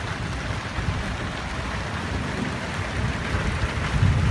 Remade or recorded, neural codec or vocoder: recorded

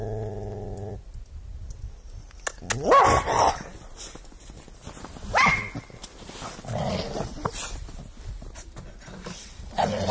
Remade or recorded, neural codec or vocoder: recorded